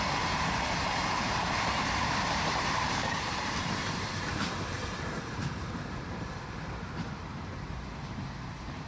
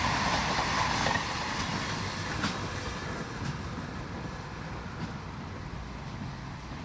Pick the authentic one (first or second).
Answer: second